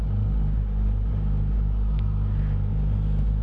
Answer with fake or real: real